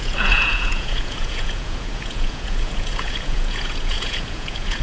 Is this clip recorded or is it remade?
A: remade